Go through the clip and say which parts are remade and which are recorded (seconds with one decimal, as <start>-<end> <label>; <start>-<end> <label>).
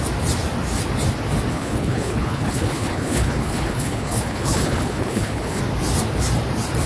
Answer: 0.0-1.5 recorded; 1.5-5.6 remade; 5.6-6.9 recorded